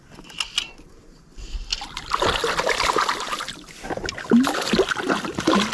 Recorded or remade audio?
recorded